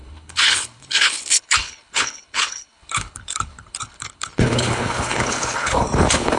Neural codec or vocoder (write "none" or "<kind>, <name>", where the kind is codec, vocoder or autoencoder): codec, HILCodec